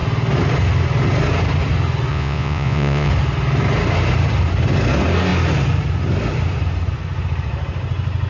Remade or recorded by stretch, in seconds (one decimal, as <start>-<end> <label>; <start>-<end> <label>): 0.0-2.1 recorded; 2.1-3.1 remade; 3.1-8.3 recorded